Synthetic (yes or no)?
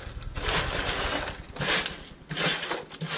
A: no